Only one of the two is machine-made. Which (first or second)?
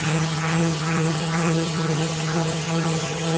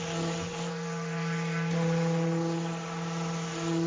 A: first